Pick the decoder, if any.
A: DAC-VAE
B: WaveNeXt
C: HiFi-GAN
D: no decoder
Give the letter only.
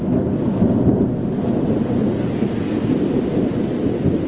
D